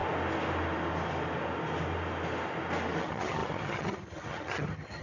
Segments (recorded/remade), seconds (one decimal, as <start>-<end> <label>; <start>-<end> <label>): 0.0-3.0 recorded; 3.0-5.0 remade